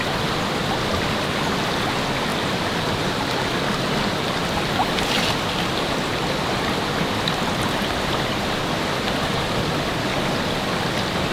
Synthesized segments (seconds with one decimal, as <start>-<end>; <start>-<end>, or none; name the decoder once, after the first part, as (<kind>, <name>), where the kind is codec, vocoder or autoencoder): 2.3-2.9 (vocoder, BigVGAN v2)

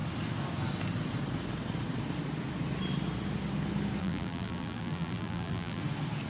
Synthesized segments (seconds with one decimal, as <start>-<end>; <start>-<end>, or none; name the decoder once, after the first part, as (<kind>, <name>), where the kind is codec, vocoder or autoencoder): 4.0-5.8 (vocoder, BigVGAN v2)

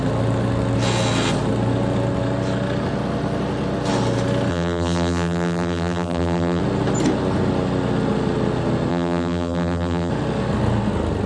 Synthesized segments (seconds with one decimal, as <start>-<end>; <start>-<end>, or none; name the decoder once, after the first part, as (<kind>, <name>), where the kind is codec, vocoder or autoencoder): 4.5-6.6 (vocoder, BigVGAN v2); 8.9-10.1

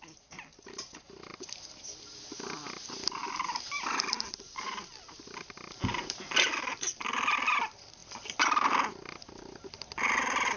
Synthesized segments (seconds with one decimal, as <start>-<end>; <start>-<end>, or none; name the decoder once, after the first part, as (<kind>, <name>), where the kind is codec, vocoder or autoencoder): 1.3-2.2 (vocoder, BigVGAN v2); 3.2-6.8; 8.0-10.6